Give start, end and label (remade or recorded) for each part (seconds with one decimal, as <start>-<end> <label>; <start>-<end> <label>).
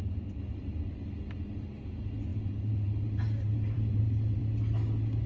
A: 0.0-0.5 recorded; 0.5-1.1 remade; 1.1-2.3 recorded; 2.3-4.4 remade; 4.4-5.3 recorded